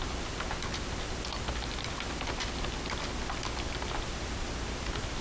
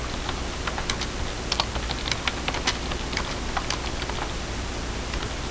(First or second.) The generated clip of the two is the first